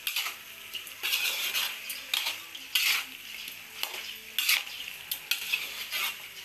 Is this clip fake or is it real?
real